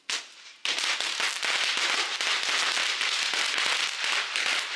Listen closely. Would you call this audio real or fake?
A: real